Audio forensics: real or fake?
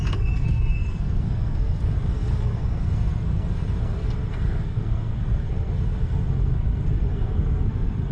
fake